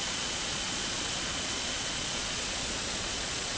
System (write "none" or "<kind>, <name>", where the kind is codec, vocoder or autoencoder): vocoder, Vocos